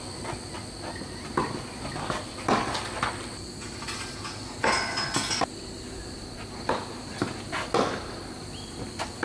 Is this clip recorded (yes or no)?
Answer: yes